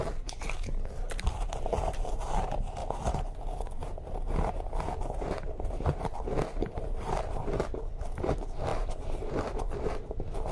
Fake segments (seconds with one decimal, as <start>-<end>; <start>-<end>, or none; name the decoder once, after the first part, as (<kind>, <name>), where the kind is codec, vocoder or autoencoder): 0.0-2.8 (vocoder, BigVGAN v2); 5.2-10.5